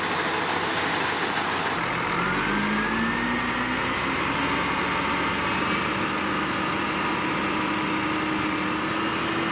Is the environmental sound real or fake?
real